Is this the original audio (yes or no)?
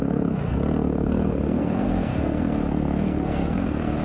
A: no